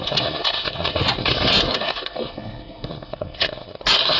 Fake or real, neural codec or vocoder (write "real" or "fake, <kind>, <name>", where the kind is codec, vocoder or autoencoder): fake, codec, SNAC